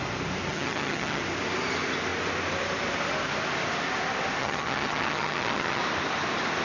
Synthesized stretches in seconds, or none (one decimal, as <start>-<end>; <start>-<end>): 0.5-1.2; 4.4-5.8